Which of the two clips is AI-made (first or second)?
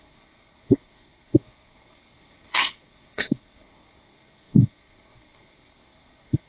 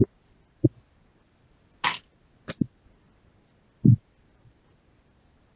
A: first